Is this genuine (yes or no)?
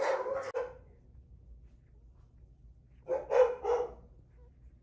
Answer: yes